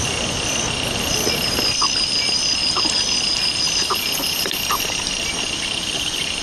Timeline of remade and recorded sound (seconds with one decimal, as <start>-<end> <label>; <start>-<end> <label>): 0.0-6.4 recorded